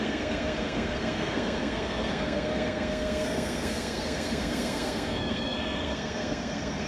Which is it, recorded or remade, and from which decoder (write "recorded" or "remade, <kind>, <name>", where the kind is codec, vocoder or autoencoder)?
remade, codec, SNAC